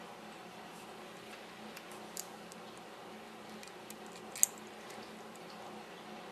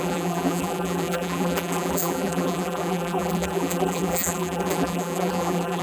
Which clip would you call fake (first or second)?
second